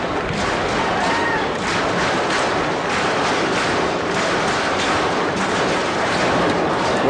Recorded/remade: recorded